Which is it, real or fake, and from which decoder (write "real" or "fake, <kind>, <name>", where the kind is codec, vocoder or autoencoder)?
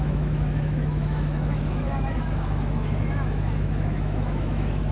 fake, autoencoder, DAC-VAE